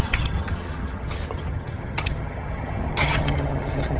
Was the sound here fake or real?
fake